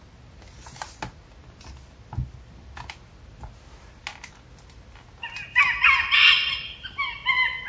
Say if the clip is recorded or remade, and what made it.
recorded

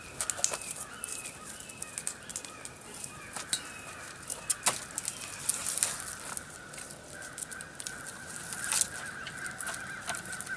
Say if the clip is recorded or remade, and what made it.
recorded